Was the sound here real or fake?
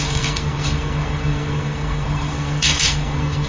fake